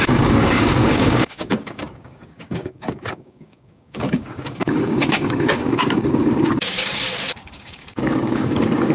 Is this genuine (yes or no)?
no